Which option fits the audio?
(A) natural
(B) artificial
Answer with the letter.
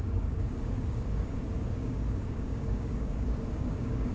B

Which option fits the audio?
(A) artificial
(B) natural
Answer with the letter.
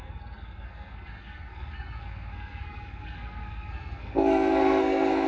A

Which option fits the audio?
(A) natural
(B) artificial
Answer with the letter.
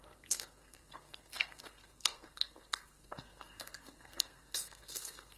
B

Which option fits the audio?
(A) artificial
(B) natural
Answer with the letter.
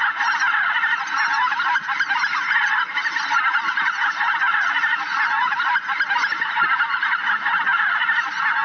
A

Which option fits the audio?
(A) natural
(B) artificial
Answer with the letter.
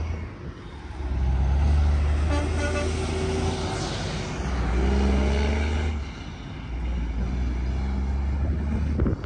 A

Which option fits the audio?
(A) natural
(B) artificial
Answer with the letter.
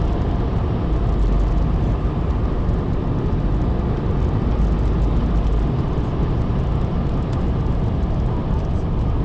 A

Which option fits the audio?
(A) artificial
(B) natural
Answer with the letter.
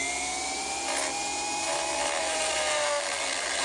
B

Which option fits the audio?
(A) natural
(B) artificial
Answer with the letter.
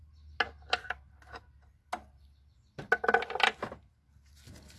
A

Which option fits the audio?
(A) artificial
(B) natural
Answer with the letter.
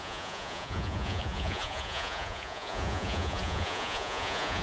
A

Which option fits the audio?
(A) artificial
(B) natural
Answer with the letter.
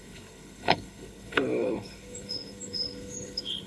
A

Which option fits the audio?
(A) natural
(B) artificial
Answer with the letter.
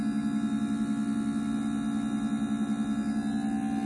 A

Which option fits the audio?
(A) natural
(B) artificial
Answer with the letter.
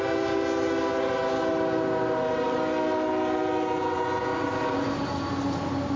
A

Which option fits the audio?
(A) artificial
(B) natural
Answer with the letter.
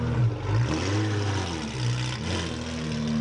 B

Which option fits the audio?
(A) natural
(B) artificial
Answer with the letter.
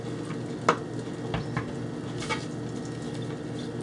A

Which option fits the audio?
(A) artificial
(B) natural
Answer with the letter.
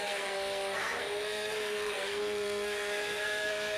A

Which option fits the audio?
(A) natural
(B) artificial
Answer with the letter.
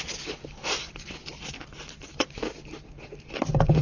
A